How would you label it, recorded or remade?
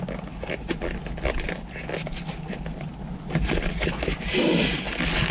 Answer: recorded